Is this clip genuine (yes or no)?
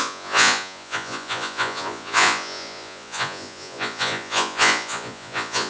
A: no